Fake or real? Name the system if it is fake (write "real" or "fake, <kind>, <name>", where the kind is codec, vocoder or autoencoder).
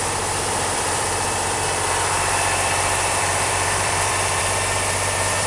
fake, vocoder, BigVGAN v2